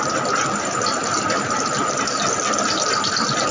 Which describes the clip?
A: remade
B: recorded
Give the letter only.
B